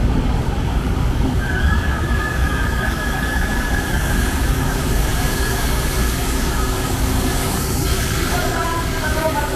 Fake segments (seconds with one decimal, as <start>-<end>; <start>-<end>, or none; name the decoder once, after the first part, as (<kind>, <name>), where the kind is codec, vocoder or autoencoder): 0.0-9.6 (codec, DAC)